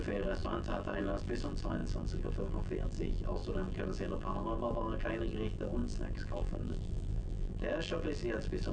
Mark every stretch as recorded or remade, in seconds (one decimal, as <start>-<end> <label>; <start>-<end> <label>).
0.0-8.7 remade